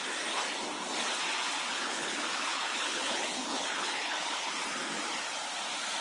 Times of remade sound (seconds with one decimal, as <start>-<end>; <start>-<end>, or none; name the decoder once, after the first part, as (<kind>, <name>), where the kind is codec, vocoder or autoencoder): 1.7-4.5 (codec, HILCodec)